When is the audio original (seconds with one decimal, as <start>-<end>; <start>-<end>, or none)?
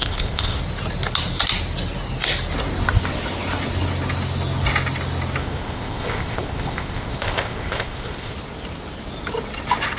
0.6-5.4; 8.3-10.0